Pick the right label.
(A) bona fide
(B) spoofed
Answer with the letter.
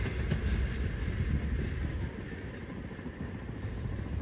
A